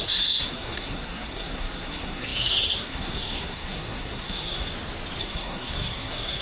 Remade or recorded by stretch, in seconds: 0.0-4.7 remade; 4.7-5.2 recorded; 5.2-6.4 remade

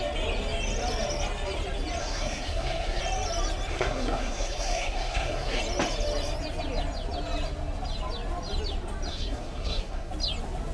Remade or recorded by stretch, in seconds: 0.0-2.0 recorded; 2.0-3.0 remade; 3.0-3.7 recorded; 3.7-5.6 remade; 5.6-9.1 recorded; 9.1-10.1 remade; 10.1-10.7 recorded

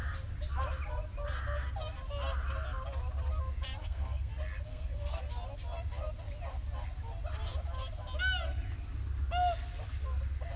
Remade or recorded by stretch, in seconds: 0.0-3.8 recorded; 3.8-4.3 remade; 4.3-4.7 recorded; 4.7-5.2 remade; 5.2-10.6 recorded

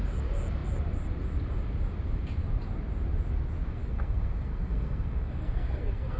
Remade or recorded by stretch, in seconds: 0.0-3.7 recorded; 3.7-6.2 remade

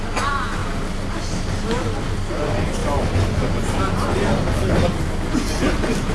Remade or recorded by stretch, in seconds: 0.0-6.1 recorded